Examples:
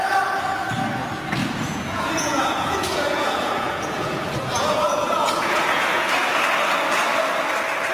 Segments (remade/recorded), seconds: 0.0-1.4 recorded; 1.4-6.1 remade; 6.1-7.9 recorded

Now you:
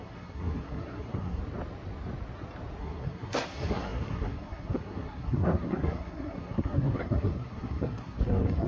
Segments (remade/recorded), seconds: 0.0-1.4 remade; 1.4-2.8 recorded; 2.8-8.7 remade

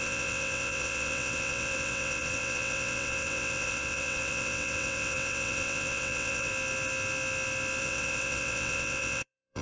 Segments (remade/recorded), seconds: 0.0-6.5 remade; 6.5-7.8 recorded; 7.8-9.6 remade

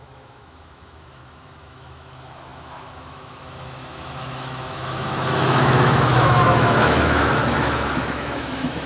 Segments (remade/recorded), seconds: 0.0-8.9 remade

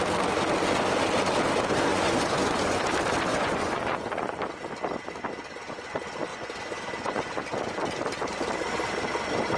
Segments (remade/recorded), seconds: 0.0-1.9 recorded; 1.9-2.8 remade; 2.8-3.3 recorded; 3.3-4.4 remade; 4.4-6.3 recorded; 6.3-7.4 remade; 7.4-9.6 recorded

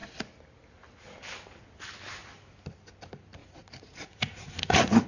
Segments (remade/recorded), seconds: 0.0-3.4 recorded; 3.4-5.1 remade

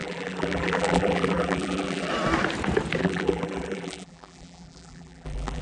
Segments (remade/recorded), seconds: 0.0-2.1 remade; 2.1-3.0 recorded; 3.0-5.6 remade

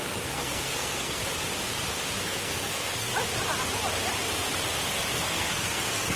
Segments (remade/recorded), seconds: 0.0-1.2 remade; 1.2-2.2 recorded; 2.2-3.1 remade; 3.1-5.1 recorded; 5.1-6.2 remade